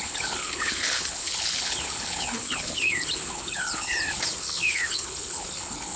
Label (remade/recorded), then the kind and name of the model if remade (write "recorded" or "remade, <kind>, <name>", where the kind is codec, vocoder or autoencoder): remade, codec, HILCodec